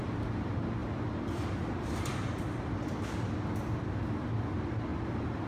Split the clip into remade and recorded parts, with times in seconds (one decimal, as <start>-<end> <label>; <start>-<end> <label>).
0.0-4.9 recorded; 4.9-5.5 remade